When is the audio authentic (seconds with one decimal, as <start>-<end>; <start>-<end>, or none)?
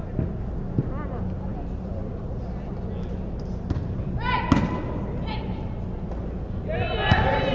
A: 0.0-7.5